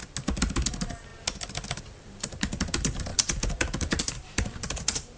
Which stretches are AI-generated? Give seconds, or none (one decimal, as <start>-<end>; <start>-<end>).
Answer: 0.7-1.1; 1.8-5.2